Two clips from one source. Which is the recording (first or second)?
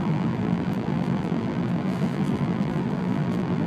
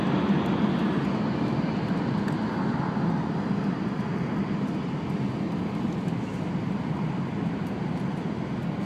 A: second